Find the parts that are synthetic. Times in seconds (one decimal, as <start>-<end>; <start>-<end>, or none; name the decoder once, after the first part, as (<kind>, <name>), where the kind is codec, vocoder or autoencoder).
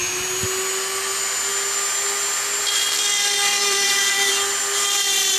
3.5-4.3 (vocoder, BigVGAN v2)